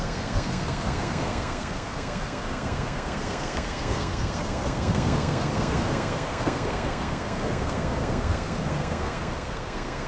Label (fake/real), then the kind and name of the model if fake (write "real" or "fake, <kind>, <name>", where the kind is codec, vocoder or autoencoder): fake, codec, SNAC